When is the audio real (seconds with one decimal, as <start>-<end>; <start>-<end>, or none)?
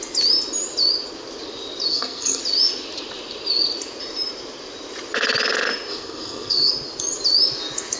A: 0.0-1.9; 2.4-5.9; 6.7-8.0